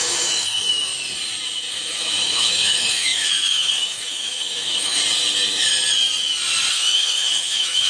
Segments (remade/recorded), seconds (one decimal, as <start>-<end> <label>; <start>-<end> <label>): 0.0-0.9 remade; 0.9-1.7 recorded; 1.7-5.0 remade; 5.0-6.7 recorded; 6.7-7.9 remade